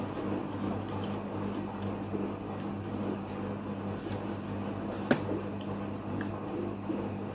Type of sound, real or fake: real